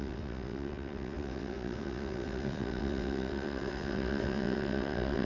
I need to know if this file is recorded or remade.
remade